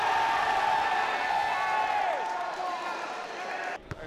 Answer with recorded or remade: recorded